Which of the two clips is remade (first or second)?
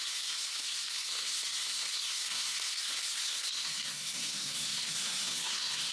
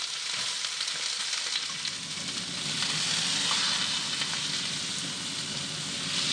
first